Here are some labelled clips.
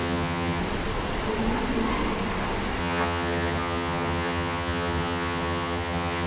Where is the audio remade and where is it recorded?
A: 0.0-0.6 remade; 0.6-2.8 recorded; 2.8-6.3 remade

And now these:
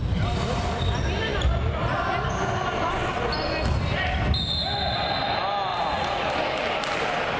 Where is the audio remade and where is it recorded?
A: 0.0-5.7 recorded; 5.7-6.3 remade; 6.3-7.4 recorded

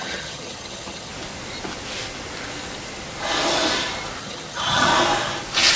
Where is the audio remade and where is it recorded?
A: 0.0-1.1 remade; 1.1-4.2 recorded; 4.2-4.9 remade; 4.9-5.8 recorded

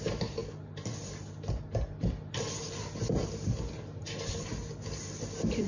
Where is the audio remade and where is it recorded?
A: 0.0-5.7 recorded

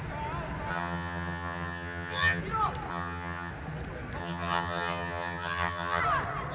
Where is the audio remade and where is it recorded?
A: 0.0-0.7 recorded; 0.7-2.4 remade; 2.4-2.9 recorded; 2.9-3.5 remade; 3.5-4.2 recorded; 4.2-6.0 remade; 6.0-6.5 recorded

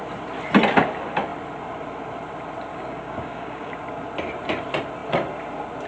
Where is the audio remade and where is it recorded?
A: 0.0-2.7 recorded; 2.7-3.7 remade; 3.7-5.9 recorded